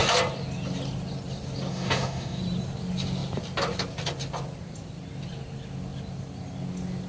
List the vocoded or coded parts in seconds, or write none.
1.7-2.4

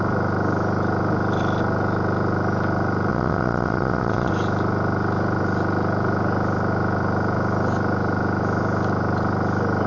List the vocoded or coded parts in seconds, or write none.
3.1-4.3

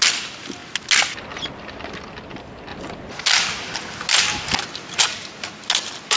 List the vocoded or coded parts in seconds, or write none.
none

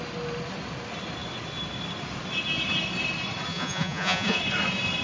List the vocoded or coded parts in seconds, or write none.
3.5-4.4

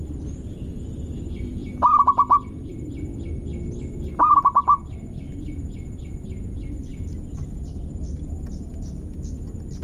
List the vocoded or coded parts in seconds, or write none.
none